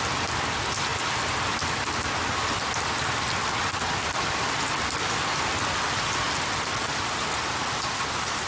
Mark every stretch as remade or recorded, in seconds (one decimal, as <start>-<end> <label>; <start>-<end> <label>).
0.0-8.5 recorded